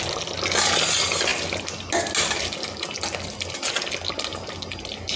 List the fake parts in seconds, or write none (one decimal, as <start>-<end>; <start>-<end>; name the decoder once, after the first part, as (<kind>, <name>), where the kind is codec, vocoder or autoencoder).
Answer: none